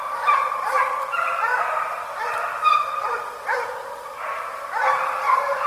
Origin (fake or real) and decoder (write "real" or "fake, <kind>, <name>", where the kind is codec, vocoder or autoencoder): fake, vocoder, BigVGAN v2